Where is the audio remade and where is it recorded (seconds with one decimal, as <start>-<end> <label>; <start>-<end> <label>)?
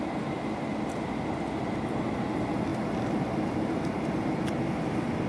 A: 0.0-5.3 recorded